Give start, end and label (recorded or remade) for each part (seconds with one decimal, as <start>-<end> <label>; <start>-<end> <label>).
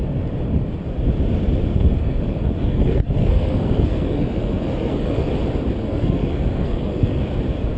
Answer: 0.0-1.7 recorded; 1.7-5.3 remade; 5.3-5.8 recorded; 5.8-7.2 remade; 7.2-7.8 recorded